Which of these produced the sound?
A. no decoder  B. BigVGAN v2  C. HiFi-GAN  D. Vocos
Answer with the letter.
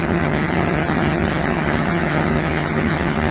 C